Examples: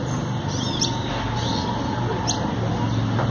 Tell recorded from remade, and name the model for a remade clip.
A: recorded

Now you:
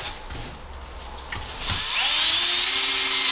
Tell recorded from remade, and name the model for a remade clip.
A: recorded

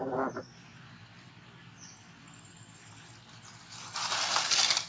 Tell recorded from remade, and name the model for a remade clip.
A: recorded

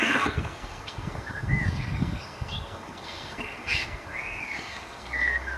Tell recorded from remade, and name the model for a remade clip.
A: remade, codec, SNAC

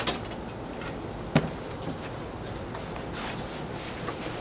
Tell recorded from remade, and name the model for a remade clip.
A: recorded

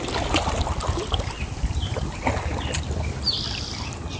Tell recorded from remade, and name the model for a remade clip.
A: recorded